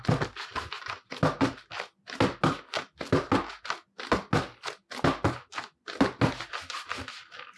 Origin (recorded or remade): recorded